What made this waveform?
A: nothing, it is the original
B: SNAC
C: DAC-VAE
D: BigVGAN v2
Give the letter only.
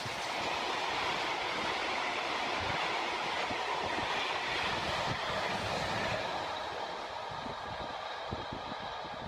D